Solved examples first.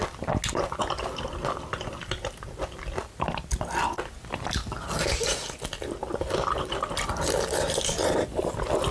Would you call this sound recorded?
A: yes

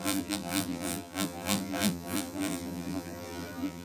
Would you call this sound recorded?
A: no